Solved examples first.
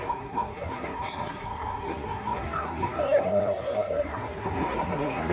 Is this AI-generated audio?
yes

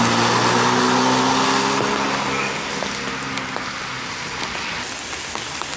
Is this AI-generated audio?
no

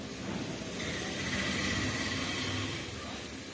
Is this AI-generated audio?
no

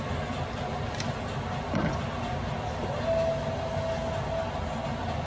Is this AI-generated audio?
no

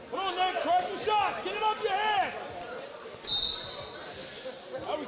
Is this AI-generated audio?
no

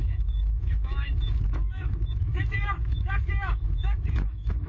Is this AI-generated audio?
yes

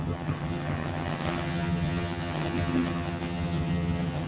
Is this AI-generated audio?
yes